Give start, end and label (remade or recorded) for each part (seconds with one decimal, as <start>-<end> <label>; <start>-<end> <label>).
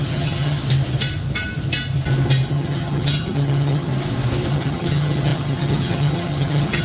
0.0-0.6 remade; 0.6-2.5 recorded; 2.5-3.9 remade; 3.9-4.5 recorded; 4.5-6.8 remade